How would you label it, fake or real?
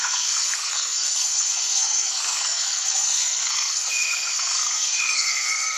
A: fake